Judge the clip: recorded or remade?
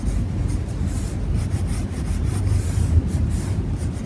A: recorded